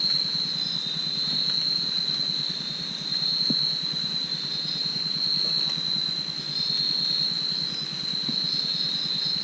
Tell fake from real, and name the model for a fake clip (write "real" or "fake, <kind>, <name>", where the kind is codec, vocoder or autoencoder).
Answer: real